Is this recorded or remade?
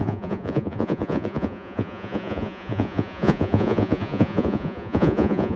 remade